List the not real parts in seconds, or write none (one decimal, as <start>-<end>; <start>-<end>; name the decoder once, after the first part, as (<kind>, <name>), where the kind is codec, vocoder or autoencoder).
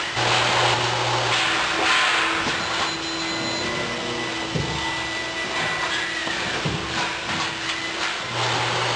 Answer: 6.2-8.3 (vocoder, BigVGAN v2)